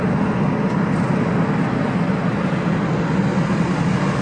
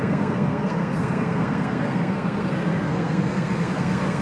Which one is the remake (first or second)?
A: second